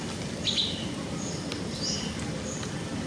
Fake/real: real